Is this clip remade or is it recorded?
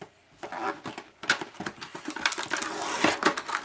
recorded